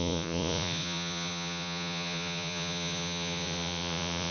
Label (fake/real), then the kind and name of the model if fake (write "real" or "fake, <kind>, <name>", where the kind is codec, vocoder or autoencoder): fake, vocoder, Vocos